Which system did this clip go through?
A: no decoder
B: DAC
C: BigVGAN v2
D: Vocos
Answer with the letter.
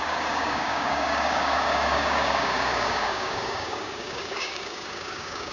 B